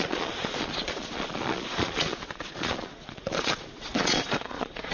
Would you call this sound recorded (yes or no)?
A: no